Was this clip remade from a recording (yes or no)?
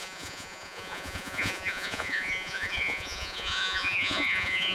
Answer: yes